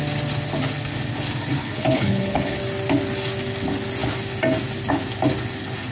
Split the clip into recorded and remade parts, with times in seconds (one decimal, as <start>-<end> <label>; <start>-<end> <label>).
0.0-1.6 recorded; 1.6-2.6 remade; 2.6-5.9 recorded